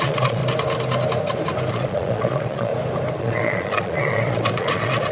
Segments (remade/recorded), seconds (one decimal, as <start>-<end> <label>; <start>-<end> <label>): 0.0-0.4 remade; 0.4-1.7 recorded; 1.7-2.7 remade; 2.7-3.2 recorded; 3.2-5.1 remade